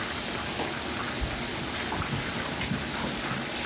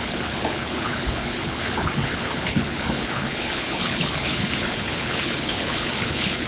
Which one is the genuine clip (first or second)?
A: first